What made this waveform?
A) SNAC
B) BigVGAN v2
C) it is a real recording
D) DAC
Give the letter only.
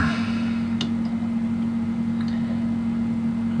C